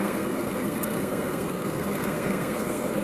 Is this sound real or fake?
fake